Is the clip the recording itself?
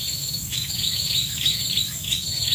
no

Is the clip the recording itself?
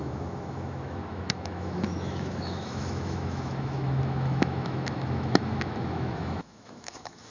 no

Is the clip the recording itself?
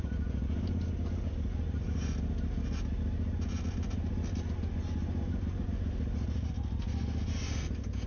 yes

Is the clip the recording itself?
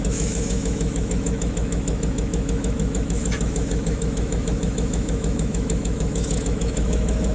no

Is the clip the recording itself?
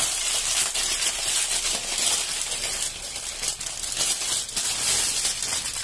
yes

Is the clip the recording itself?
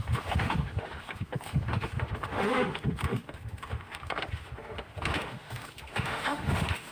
no